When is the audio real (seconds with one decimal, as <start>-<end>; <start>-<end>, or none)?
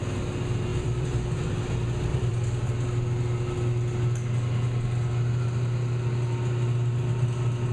0.0-0.7; 1.4-2.1; 2.7-7.7